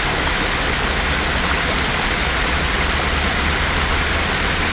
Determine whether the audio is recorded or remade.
recorded